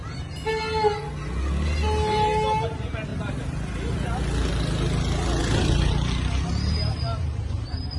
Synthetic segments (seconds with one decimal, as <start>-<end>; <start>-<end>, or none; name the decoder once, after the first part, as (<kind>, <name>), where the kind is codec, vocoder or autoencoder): 5.4-5.9 (vocoder, BigVGAN v2); 7.1-8.0